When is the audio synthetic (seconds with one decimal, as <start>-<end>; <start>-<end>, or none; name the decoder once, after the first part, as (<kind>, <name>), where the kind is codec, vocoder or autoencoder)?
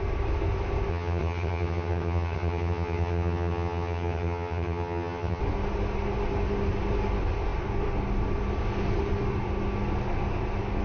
0.9-5.4 (vocoder, HiFi-GAN)